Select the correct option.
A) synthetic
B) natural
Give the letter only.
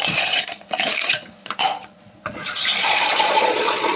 A